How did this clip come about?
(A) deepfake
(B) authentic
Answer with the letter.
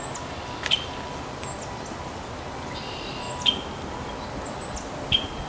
B